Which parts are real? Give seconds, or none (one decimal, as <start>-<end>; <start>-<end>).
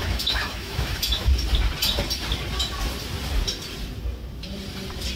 1.3-5.2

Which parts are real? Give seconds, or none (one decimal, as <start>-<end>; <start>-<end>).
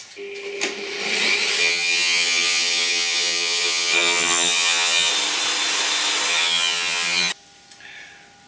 0.0-1.6; 5.1-6.3; 7.3-8.5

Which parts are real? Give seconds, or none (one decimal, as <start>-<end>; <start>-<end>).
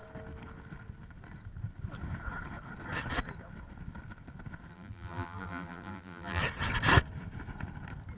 0.0-4.7; 6.4-8.2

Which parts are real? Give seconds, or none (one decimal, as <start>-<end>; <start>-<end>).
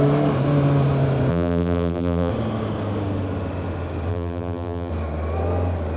0.0-1.3; 2.3-4.1; 4.9-6.0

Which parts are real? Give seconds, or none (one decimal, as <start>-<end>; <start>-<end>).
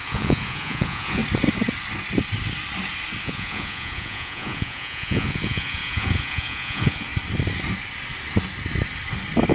1.2-3.2; 7.1-9.5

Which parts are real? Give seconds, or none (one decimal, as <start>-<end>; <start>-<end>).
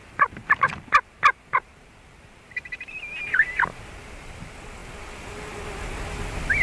4.0-6.6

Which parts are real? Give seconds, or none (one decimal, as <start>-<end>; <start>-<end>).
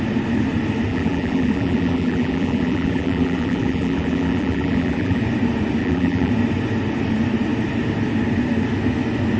0.0-0.9; 5.2-5.8; 6.3-9.4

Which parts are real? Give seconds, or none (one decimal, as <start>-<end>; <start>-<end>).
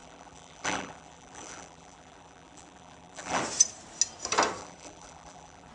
3.4-4.6